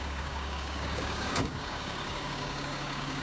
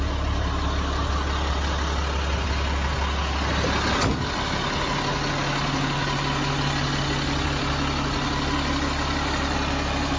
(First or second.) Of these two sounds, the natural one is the second